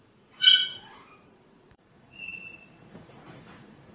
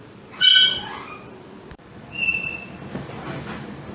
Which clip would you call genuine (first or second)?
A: second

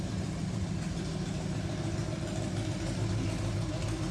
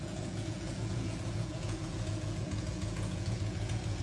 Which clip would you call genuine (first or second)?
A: first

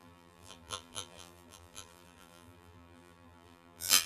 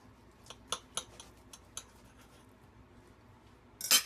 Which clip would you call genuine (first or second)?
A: second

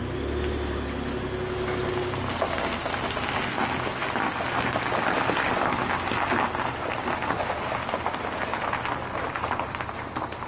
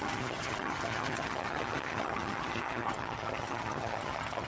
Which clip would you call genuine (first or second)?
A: first